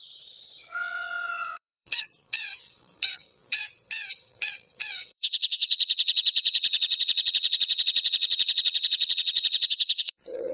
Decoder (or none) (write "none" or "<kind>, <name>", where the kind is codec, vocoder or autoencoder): vocoder, WaveNeXt